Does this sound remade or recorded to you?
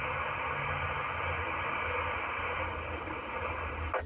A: recorded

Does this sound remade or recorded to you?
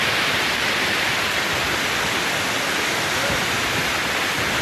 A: recorded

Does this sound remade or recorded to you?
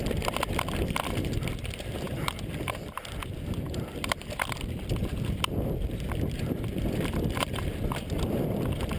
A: remade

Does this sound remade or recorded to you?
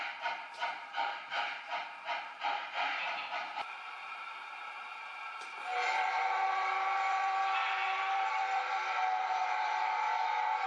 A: remade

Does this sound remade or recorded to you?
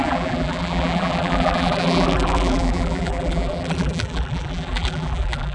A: remade